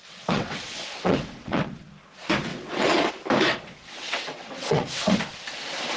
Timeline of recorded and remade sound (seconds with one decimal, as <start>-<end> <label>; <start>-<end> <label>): 0.0-1.9 remade; 1.9-2.5 recorded; 2.5-3.1 remade; 3.1-3.5 recorded; 3.5-5.2 remade; 5.2-6.0 recorded